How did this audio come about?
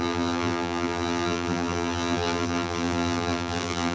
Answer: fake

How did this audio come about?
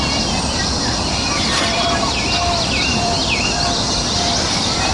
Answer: real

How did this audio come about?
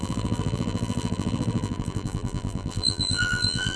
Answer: fake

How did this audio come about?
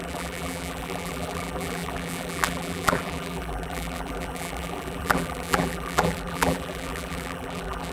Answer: fake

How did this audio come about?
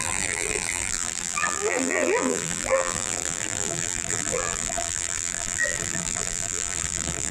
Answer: fake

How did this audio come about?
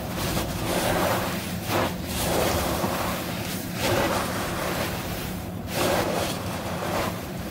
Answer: fake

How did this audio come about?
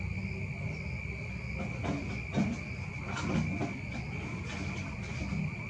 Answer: real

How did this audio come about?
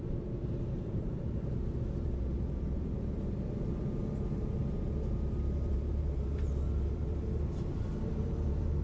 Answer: fake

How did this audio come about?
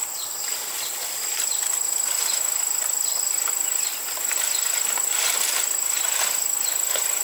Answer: real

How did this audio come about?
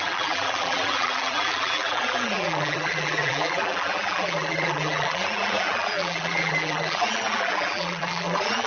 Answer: fake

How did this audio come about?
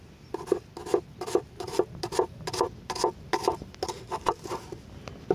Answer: real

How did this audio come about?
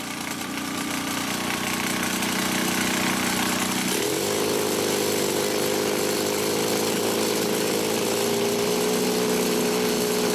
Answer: real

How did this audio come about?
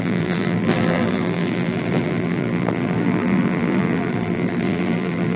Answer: fake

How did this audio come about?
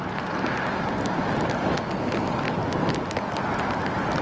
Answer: real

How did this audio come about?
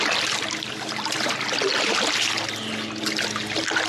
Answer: real